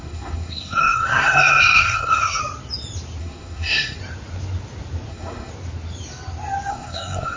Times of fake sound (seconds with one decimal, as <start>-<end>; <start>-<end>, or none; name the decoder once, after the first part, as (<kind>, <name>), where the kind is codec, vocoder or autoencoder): 0.0-2.4 (codec, SNAC); 3.2-4.0; 5.1-5.5; 6.7-7.4